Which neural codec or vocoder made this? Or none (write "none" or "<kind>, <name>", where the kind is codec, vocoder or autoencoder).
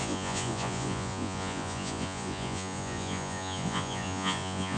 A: vocoder, Vocos